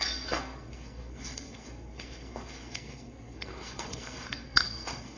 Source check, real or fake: fake